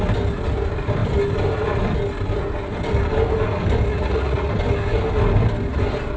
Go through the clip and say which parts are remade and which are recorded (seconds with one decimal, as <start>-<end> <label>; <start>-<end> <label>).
0.0-3.9 recorded; 3.9-4.5 remade; 4.5-6.2 recorded